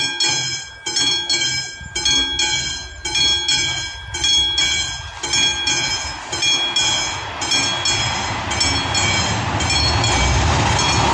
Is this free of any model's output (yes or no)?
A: yes